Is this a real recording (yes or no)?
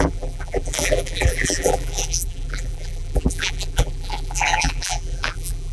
no